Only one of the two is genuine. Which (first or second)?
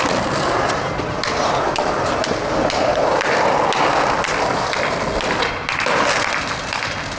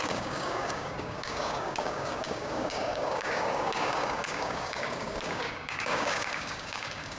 first